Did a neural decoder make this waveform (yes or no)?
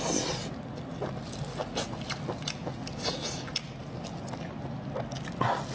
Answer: no